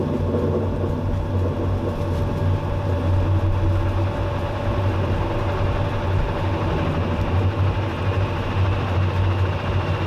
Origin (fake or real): real